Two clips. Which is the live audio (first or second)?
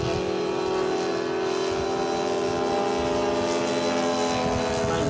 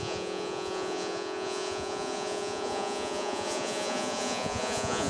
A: first